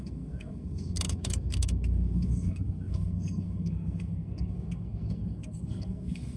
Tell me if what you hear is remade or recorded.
remade